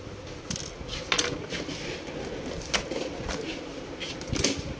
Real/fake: real